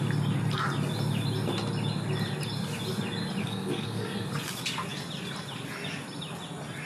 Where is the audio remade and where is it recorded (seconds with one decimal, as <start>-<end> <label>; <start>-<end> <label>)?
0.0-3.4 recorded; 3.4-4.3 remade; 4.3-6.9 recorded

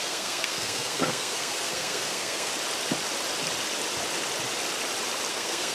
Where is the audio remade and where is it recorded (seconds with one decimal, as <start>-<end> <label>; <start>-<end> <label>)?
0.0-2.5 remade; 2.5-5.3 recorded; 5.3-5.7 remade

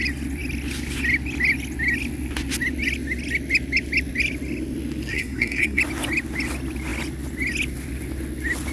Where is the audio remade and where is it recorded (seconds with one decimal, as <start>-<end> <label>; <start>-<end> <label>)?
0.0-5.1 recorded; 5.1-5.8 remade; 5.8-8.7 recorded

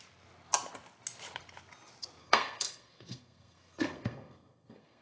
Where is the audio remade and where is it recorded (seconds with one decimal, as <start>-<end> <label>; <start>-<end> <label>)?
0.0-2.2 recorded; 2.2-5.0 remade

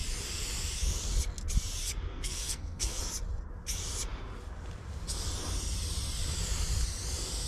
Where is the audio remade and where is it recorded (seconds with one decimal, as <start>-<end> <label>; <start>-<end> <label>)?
0.0-2.1 recorded; 2.1-3.0 remade; 3.0-7.5 recorded

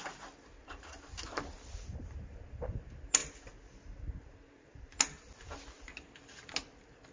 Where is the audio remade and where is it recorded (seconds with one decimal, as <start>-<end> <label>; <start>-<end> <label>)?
0.0-7.1 recorded

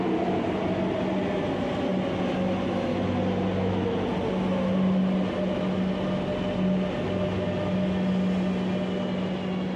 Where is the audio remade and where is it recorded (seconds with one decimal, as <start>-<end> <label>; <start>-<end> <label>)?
0.0-9.8 recorded

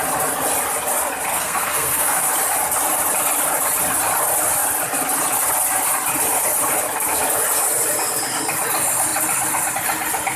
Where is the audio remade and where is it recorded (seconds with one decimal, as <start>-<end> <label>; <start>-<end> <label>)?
0.0-1.3 recorded; 1.3-2.3 remade; 2.3-10.4 recorded